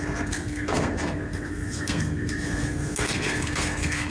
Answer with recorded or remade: remade